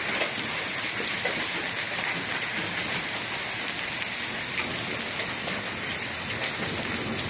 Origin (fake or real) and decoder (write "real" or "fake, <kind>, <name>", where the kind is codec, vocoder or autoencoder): real